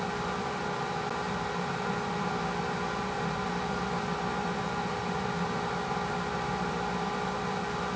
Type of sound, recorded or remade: recorded